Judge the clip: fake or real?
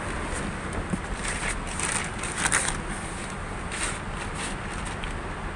real